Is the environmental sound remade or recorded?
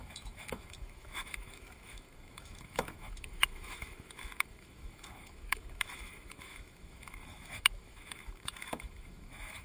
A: remade